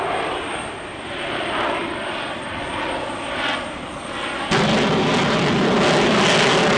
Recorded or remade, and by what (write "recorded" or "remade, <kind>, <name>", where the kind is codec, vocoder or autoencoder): recorded